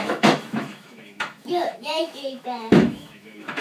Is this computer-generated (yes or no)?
yes